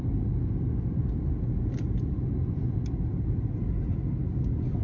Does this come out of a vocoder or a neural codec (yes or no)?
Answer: no